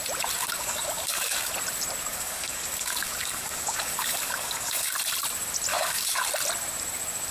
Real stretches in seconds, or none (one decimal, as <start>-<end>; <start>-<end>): 0.0-0.4; 1.5-2.1; 4.9-5.7; 6.2-7.3